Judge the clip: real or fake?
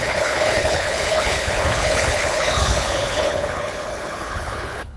fake